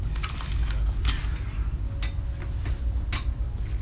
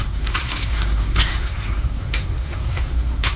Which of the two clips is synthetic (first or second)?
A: second